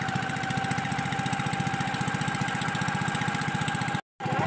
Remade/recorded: recorded